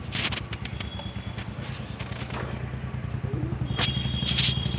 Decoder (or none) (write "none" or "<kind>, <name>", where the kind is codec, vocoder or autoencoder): none